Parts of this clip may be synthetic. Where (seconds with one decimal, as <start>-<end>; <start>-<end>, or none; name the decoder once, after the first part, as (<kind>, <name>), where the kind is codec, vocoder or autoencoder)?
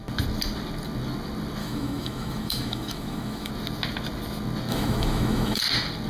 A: 1.6-3.5 (autoencoder, DAC-VAE); 4.7-5.6